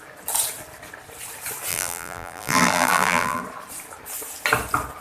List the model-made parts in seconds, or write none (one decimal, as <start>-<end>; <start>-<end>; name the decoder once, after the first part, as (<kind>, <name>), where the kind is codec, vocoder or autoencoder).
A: 1.7-3.4 (vocoder, BigVGAN v2)